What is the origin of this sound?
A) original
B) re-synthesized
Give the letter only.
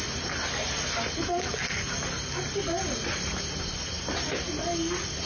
A